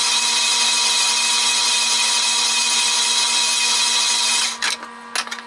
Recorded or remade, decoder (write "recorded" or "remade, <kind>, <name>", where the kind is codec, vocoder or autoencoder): recorded